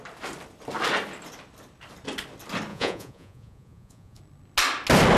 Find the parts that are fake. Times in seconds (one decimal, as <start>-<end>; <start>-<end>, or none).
2.7-4.2